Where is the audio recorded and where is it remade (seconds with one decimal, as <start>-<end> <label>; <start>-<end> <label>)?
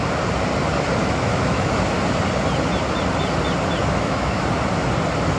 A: 0.0-1.0 recorded; 1.0-1.7 remade; 1.7-3.8 recorded; 3.8-4.4 remade; 4.4-5.4 recorded